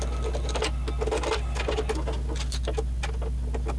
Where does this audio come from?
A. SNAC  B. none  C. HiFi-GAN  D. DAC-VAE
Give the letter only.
B